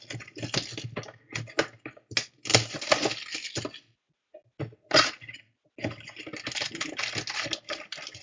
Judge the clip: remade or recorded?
recorded